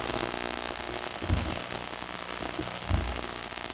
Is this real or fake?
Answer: fake